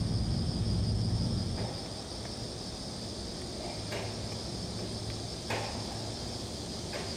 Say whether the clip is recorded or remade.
recorded